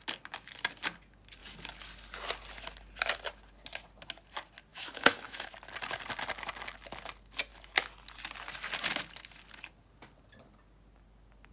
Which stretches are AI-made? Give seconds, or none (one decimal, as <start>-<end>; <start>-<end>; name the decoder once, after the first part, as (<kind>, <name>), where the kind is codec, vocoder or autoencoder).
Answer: 4.7-5.5 (autoencoder, DAC-VAE)